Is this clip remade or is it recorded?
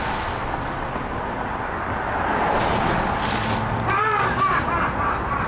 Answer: recorded